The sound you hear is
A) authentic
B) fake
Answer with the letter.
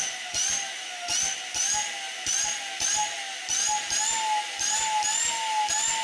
A